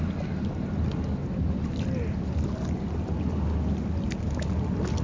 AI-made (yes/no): no